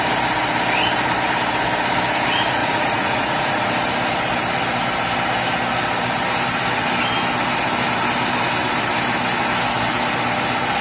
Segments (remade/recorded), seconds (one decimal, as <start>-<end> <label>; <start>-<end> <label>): 0.0-2.6 recorded; 2.6-3.7 remade; 3.7-10.8 recorded